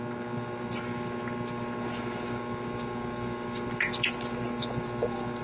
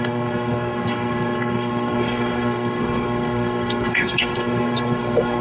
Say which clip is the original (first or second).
first